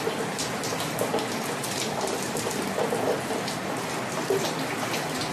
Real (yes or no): yes